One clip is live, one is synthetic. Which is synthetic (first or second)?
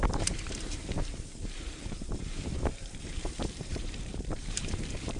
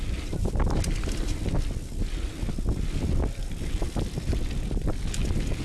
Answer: first